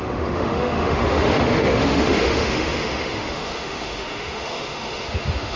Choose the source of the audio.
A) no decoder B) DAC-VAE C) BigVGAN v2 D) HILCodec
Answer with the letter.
B